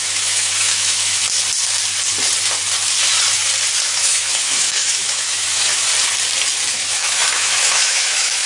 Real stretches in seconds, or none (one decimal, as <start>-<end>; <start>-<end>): 1.2-3.8; 5.9-6.7